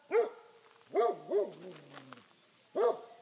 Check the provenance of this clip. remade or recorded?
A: recorded